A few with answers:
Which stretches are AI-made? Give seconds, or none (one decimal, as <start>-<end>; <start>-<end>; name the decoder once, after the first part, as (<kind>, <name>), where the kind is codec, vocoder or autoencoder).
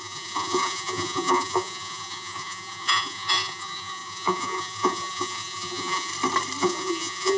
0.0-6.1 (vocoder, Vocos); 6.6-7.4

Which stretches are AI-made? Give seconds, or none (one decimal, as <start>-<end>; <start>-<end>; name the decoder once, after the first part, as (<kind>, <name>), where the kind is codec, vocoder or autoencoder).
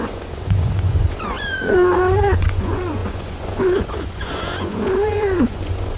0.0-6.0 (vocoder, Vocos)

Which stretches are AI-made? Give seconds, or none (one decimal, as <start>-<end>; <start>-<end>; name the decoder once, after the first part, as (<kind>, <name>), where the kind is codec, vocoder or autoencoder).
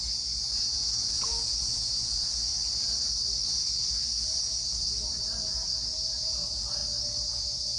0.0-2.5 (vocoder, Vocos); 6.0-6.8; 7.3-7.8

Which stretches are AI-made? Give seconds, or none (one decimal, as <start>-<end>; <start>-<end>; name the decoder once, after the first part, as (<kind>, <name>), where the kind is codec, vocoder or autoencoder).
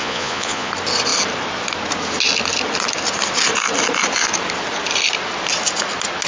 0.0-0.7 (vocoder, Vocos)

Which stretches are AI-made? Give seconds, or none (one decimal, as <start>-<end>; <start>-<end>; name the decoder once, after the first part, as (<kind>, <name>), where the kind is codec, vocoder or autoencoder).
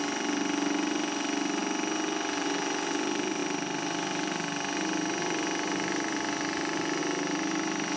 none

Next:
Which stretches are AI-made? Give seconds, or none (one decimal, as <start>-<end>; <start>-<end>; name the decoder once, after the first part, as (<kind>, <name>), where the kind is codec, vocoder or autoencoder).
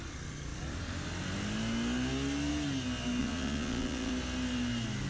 3.2-4.1 (vocoder, Vocos)